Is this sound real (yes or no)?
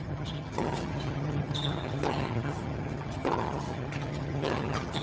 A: no